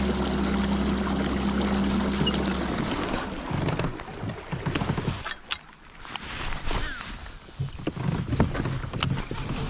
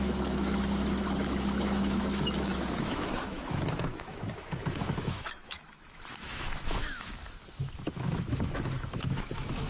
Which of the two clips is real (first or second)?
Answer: first